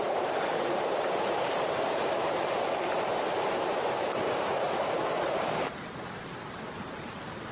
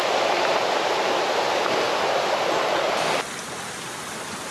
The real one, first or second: second